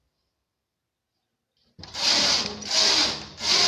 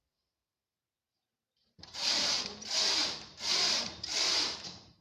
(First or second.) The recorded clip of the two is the first